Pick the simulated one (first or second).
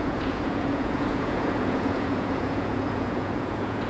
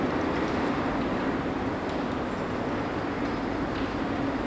first